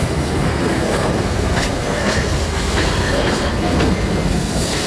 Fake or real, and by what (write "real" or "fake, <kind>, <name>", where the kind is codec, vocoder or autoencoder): fake, codec, SNAC